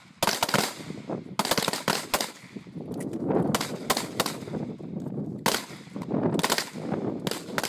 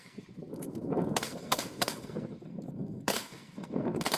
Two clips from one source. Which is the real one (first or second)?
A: first